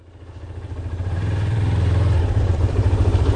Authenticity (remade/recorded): remade